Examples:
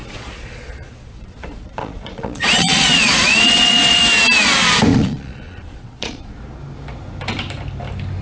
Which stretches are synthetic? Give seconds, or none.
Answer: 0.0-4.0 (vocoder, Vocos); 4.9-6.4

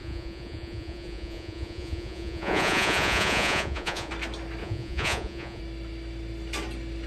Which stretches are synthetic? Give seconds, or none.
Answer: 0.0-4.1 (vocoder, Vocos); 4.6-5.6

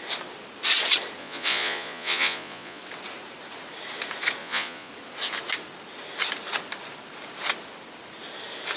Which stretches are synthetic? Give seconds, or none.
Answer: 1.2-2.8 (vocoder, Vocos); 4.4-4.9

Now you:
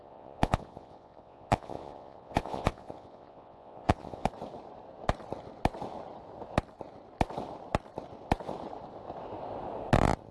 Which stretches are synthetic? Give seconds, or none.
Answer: 0.0-4.3 (vocoder, Vocos)

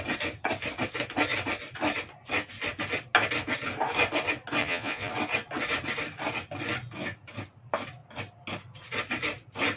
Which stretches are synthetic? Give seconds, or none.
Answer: 4.6-5.1 (vocoder, Vocos)